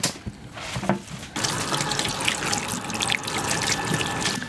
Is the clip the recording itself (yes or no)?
yes